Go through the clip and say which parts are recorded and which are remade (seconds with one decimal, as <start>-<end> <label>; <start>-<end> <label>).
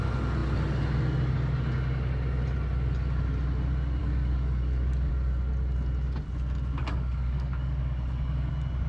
0.0-4.0 recorded; 4.0-5.1 remade; 5.1-6.8 recorded; 6.8-8.5 remade; 8.5-8.9 recorded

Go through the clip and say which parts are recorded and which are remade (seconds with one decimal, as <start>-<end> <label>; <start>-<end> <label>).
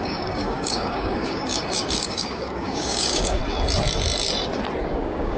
0.0-3.4 remade; 3.4-4.8 recorded; 4.8-5.4 remade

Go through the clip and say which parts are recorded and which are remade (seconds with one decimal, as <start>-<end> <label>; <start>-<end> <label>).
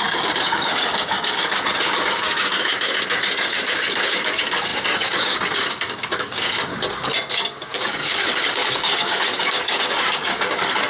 0.0-6.7 remade; 6.7-7.3 recorded; 7.3-10.9 remade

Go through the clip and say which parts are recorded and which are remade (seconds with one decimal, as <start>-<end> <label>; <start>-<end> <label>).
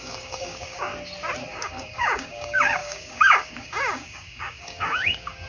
0.0-0.9 remade; 0.9-1.5 recorded; 1.5-5.5 remade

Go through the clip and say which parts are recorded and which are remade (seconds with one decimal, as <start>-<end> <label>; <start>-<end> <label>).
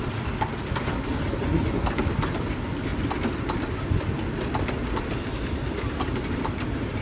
0.0-7.0 recorded